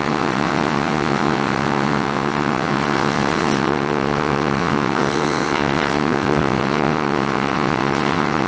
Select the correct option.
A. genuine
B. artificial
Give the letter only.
B